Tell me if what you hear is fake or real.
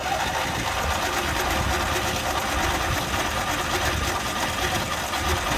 real